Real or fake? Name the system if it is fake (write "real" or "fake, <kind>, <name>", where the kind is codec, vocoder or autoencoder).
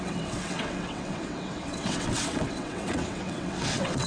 fake, vocoder, WaveNeXt